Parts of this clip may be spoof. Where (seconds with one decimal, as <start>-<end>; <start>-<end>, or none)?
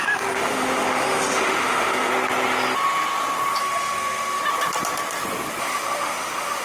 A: 0.0-2.1; 3.6-4.4; 5.6-6.6